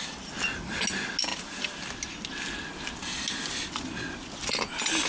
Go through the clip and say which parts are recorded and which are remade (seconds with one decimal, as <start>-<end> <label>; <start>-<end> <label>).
0.0-5.1 recorded